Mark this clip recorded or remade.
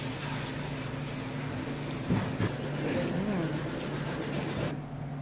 recorded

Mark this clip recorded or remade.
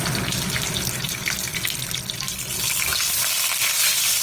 recorded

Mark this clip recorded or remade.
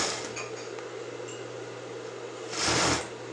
recorded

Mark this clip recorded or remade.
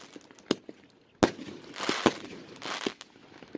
recorded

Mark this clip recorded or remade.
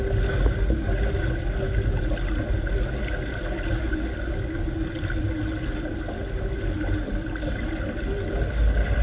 recorded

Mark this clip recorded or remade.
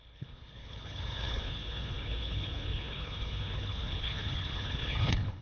remade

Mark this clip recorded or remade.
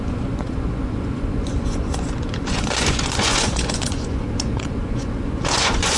remade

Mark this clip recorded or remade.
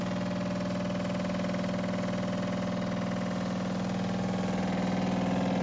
recorded